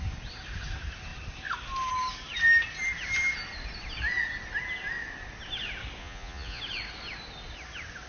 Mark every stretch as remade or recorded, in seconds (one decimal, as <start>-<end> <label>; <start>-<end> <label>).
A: 0.0-6.0 recorded; 6.0-6.6 remade; 6.6-8.1 recorded